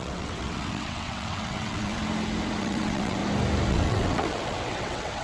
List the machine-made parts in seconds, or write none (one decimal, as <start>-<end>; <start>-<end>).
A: 0.0-2.0; 2.6-3.2; 3.7-5.2